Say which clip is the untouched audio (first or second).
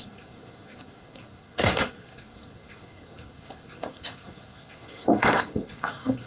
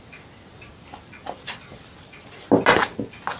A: second